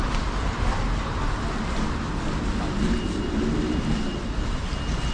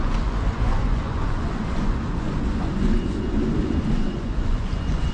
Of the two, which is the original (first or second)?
first